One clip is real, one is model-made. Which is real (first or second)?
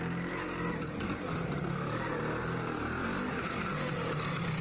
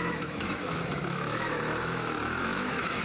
first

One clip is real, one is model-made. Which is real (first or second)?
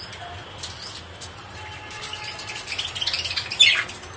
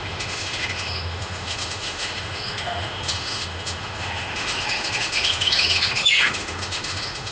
first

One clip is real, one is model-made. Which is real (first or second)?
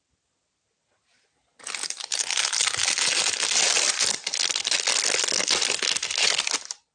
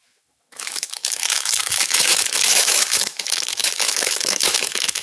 first